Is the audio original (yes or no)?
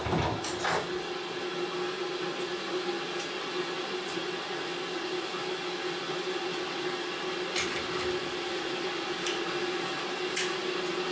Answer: yes